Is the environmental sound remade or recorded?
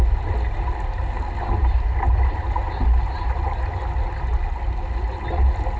recorded